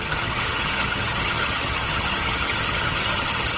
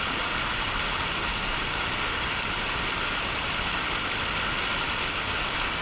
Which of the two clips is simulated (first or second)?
first